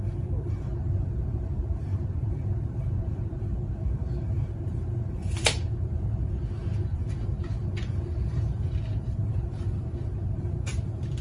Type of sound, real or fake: fake